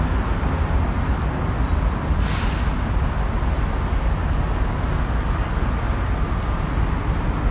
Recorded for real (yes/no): yes